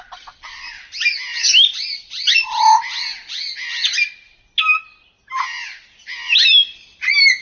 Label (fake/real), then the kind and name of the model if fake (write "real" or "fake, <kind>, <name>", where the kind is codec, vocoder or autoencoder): real